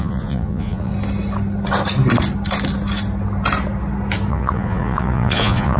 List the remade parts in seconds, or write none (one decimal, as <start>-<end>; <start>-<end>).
0.0-0.9; 4.3-5.8